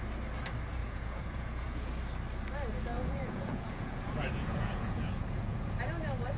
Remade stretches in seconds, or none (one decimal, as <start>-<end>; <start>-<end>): 0.8-1.9; 2.9-5.8